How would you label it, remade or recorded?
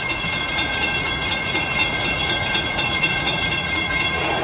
remade